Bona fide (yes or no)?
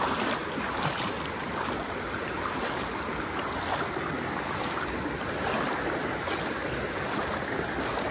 yes